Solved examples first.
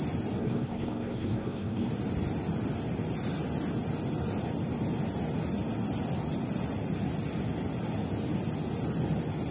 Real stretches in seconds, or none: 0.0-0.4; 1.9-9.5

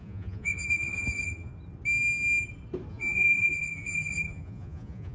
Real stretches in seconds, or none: 1.5-2.9

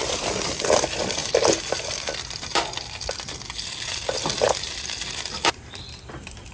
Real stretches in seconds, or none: none

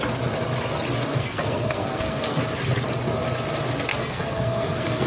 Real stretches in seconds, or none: 0.0-1.1; 2.4-3.9

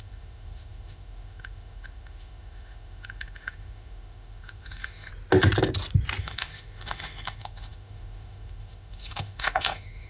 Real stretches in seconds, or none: 5.1-6.2